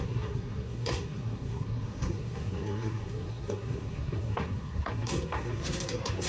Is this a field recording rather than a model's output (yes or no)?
no